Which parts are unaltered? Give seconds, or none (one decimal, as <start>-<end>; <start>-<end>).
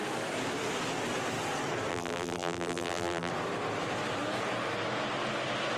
0.0-1.9; 3.3-5.8